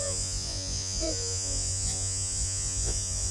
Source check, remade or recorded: remade